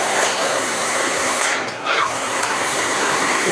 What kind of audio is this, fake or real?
fake